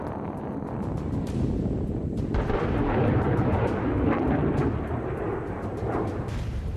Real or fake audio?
fake